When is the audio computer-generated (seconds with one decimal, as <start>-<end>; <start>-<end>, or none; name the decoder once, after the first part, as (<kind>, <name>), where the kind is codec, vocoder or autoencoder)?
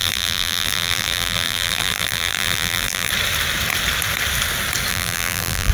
0.0-3.1 (vocoder, BigVGAN v2); 4.9-5.7